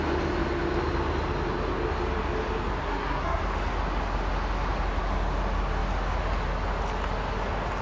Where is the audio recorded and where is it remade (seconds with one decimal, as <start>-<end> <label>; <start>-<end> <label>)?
0.0-2.8 recorded; 2.8-3.4 remade; 3.4-7.8 recorded